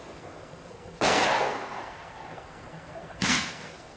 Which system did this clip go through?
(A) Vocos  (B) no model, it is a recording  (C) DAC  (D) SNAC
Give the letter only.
D